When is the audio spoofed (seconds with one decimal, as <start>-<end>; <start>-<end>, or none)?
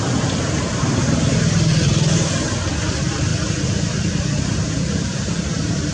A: 1.7-2.3